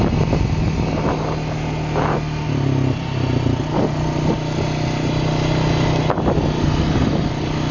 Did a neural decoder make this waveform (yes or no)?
no